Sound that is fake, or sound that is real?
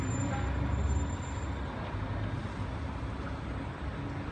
real